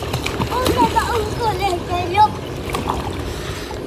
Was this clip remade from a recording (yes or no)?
no